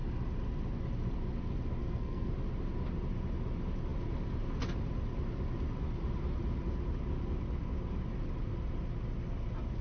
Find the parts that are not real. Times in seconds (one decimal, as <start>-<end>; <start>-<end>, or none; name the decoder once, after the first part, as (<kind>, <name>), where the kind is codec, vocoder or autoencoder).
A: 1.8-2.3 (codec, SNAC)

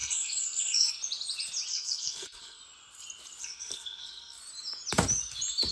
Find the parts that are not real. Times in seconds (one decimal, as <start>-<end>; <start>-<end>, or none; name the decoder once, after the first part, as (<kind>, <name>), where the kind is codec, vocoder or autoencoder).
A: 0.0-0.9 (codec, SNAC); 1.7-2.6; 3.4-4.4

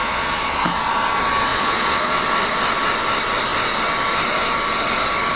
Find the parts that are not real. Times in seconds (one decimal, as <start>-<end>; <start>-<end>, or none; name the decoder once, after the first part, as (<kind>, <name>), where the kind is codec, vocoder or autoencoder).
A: 0.0-0.6 (vocoder, Vocos); 1.5-2.2